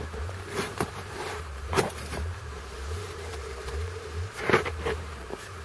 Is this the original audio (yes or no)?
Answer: no